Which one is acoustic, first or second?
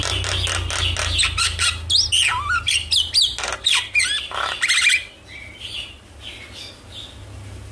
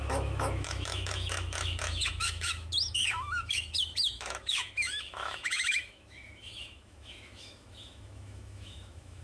first